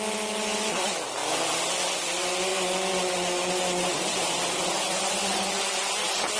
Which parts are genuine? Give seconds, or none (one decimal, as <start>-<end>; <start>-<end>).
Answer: 0.0-6.4